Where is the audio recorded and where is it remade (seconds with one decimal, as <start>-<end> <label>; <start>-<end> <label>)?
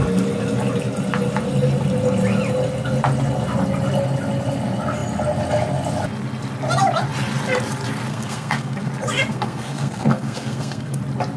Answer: 0.0-8.1 recorded; 8.1-8.9 remade; 8.9-9.3 recorded; 9.3-11.0 remade; 11.0-11.4 recorded